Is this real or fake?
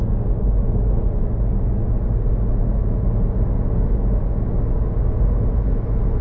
real